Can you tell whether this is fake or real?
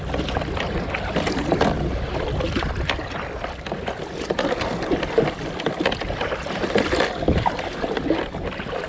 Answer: real